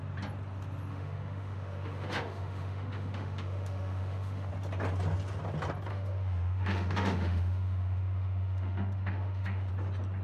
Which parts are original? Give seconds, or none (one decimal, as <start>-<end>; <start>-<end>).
0.0-0.9; 4.5-5.9; 9.7-10.2